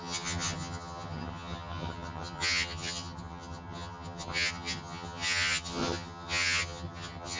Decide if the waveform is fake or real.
fake